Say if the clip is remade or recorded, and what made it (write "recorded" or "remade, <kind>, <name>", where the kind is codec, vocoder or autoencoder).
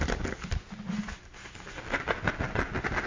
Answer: recorded